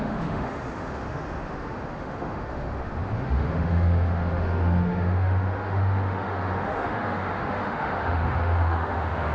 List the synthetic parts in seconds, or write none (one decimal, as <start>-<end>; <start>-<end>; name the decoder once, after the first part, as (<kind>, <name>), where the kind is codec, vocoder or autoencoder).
0.0-9.3 (autoencoder, DAC-VAE)